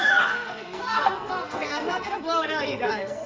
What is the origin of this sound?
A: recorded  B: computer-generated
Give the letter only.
B